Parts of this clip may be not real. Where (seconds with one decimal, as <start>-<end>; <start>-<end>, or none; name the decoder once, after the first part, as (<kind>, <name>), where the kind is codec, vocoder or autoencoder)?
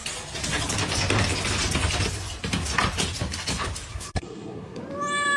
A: 3.9-4.8 (codec, SNAC)